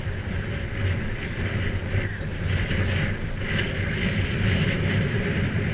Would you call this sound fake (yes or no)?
no